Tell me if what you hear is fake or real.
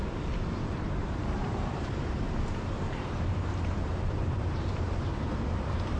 fake